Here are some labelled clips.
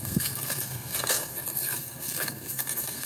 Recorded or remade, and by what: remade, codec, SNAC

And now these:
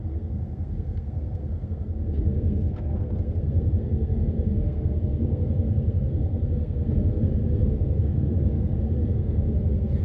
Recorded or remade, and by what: remade, codec, SNAC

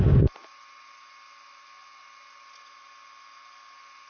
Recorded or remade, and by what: recorded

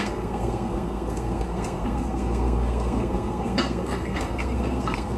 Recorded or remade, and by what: remade, codec, SNAC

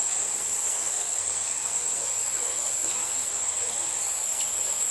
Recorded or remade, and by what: remade, codec, SNAC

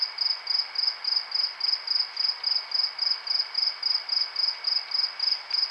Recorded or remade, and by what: recorded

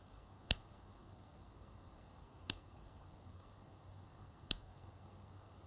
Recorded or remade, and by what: remade, codec, SNAC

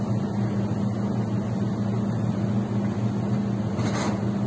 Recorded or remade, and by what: recorded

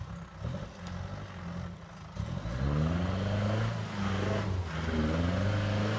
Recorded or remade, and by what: recorded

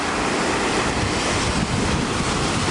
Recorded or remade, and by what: recorded